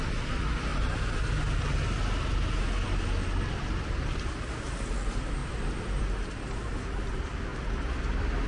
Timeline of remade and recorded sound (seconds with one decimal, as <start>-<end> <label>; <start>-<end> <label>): 0.0-0.7 remade; 0.7-4.9 recorded; 4.9-8.5 remade